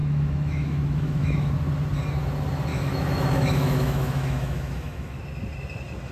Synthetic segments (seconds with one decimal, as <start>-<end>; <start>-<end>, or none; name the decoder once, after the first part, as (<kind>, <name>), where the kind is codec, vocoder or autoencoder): 0.0-1.5 (autoencoder, DAC-VAE); 2.7-5.2